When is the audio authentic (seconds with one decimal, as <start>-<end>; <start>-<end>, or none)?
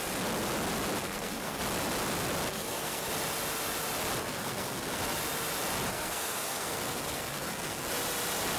0.0-1.0; 1.6-2.5; 3.1-4.2; 5.0-5.9; 7.9-8.6